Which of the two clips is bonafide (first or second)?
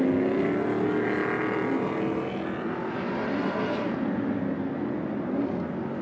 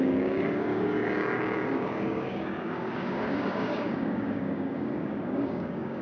first